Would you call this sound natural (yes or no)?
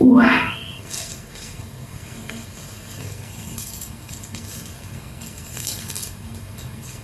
no